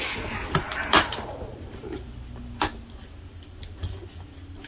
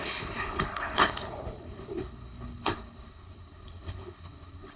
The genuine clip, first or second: first